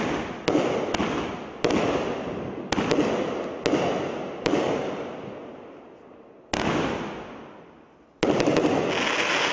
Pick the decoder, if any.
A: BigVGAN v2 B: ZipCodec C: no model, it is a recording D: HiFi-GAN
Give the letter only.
C